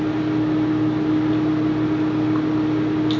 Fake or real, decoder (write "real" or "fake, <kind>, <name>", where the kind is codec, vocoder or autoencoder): real